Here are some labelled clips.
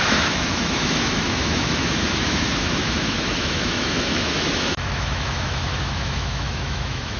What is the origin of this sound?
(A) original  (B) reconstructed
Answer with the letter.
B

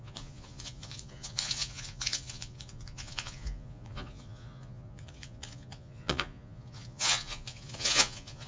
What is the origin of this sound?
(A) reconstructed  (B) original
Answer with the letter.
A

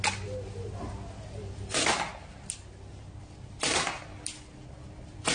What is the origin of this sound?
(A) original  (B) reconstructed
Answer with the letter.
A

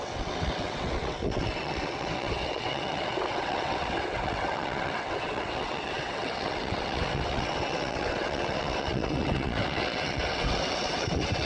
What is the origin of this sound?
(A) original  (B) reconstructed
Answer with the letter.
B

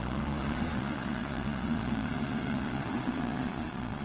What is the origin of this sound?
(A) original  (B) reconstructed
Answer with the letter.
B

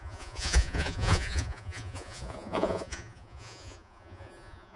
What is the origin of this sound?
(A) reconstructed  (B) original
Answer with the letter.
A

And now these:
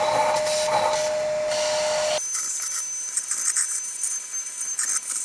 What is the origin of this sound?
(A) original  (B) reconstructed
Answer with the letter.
A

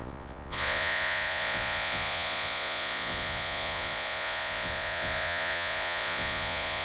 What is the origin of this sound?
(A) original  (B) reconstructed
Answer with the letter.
B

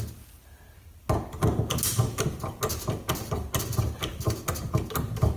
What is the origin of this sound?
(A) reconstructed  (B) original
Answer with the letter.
B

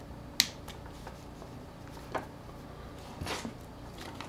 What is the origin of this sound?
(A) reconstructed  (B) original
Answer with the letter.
B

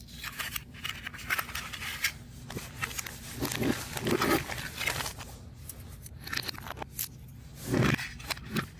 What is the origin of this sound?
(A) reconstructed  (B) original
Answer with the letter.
B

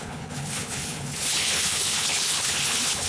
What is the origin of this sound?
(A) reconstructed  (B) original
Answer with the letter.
A